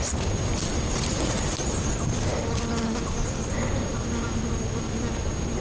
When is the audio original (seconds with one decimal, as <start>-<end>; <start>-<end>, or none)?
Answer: 0.0-5.6